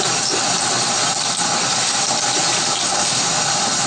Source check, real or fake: real